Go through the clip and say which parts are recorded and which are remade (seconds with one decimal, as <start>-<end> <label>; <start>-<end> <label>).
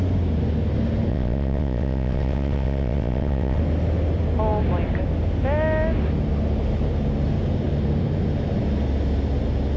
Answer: 0.0-1.1 recorded; 1.1-3.6 remade; 3.6-9.8 recorded